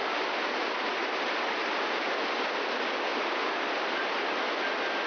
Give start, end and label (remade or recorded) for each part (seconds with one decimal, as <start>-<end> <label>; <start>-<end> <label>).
0.0-5.1 recorded